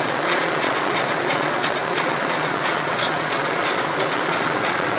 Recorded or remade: remade